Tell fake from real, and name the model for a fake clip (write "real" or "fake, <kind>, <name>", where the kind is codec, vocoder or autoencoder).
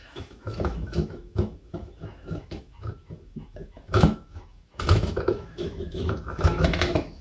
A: fake, autoencoder, DAC-VAE